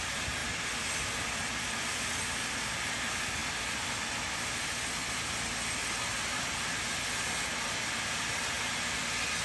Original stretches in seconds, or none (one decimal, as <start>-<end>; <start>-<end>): 0.0-9.4